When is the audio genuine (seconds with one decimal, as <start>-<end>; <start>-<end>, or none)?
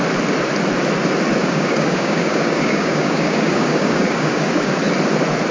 0.0-1.4; 4.7-5.5